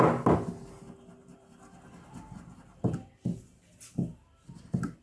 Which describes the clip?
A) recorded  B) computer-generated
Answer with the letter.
A